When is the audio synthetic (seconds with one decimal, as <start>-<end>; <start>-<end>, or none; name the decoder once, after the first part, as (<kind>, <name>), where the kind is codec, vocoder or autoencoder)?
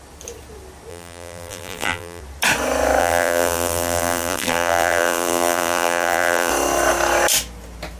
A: 0.9-2.2 (vocoder, BigVGAN v2); 3.0-6.5